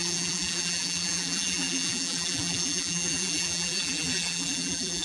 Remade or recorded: remade